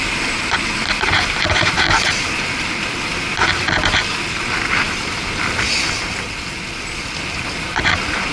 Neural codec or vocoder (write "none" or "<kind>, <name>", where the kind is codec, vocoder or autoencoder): none